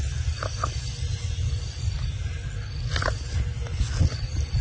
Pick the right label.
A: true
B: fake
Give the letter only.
A